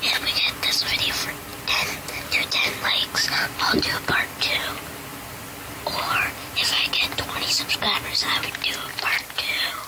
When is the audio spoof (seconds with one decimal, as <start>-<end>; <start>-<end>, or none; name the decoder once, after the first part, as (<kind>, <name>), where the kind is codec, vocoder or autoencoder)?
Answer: none